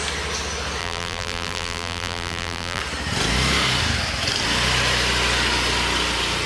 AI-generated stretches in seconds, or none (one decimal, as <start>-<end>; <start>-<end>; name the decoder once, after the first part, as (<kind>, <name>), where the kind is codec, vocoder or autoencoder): 0.8-2.8 (vocoder, BigVGAN v2)